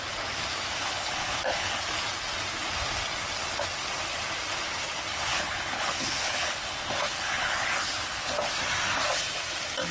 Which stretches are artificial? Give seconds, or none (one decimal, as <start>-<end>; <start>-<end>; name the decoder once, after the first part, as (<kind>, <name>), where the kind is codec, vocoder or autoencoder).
0.8-1.8 (codec, HILCodec); 5.1-8.5